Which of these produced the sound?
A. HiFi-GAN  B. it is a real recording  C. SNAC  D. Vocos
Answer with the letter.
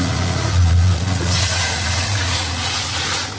D